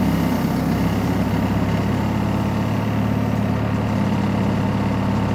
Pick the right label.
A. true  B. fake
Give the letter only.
A